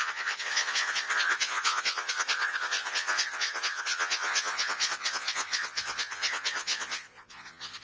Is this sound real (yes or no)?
no